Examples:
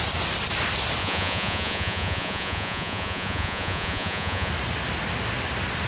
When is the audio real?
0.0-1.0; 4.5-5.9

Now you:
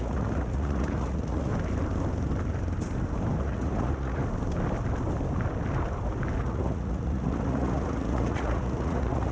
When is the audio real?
1.5-3.4; 4.2-6.4

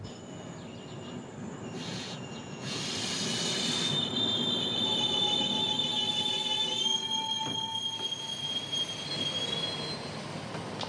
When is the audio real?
0.0-1.9; 2.8-10.9

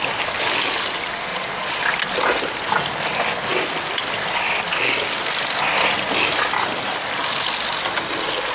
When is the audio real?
0.0-1.3; 1.8-8.5